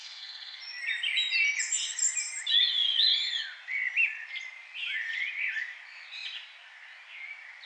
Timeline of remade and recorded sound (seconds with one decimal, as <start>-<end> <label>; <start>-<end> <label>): 0.0-0.6 remade; 0.6-7.7 recorded